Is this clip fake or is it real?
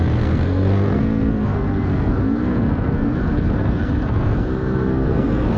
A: fake